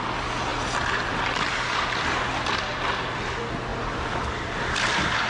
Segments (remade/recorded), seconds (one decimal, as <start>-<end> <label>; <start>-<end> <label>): 0.0-5.3 recorded